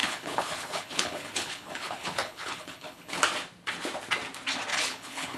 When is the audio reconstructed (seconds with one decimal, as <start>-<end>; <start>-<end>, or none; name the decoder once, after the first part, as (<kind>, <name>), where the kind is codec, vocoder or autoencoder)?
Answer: 0.0-3.2 (codec, HILCodec); 4.7-5.4

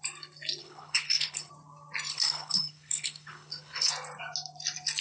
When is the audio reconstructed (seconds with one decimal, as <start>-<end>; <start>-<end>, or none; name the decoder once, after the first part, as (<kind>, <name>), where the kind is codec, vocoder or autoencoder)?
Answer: 0.6-1.5 (codec, HILCodec); 2.1-3.9

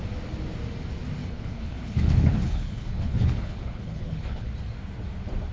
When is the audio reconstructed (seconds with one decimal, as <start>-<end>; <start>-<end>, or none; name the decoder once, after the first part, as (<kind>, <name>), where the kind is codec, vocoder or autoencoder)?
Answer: 1.2-4.5 (codec, HILCodec)

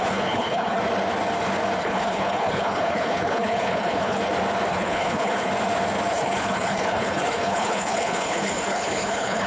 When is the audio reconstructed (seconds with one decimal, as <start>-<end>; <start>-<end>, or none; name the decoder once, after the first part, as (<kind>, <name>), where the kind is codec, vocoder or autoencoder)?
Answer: 0.0-0.8 (codec, HILCodec); 1.8-4.2; 4.7-5.5; 6.1-9.5

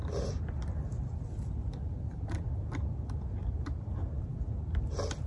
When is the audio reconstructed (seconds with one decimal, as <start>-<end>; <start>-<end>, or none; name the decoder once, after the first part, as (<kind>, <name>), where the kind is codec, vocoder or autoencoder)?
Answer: none

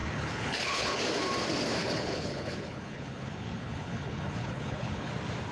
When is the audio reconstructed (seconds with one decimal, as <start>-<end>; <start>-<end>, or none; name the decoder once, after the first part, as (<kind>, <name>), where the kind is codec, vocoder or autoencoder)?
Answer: 0.0-1.0 (codec, HILCodec); 1.8-5.1

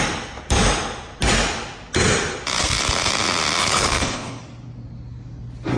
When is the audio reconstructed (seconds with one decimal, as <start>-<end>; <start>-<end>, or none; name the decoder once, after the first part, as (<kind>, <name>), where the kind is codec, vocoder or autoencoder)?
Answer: 3.6-4.4 (codec, HILCodec)

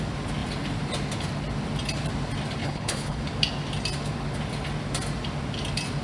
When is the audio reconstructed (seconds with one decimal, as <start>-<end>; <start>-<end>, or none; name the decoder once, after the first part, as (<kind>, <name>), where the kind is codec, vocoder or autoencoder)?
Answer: 2.6-3.2 (codec, HILCodec)